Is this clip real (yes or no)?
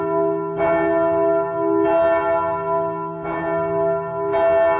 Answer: yes